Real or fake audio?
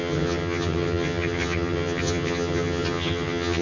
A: fake